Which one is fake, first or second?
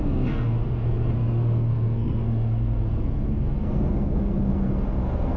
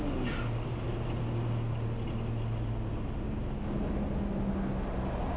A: first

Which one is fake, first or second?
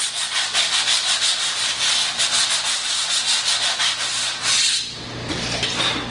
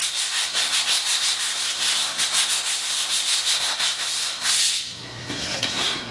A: second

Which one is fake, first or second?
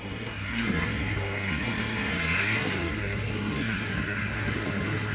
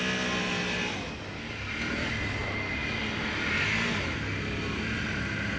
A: first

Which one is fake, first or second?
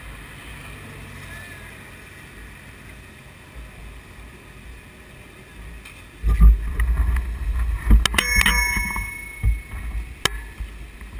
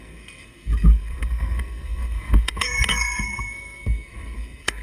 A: second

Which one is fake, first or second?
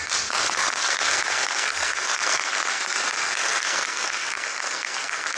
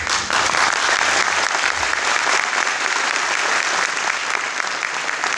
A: first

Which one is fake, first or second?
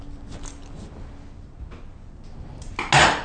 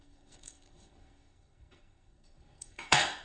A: second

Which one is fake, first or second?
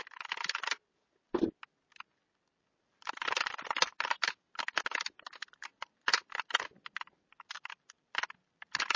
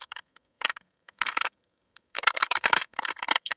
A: second